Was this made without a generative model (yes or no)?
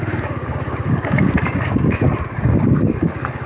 no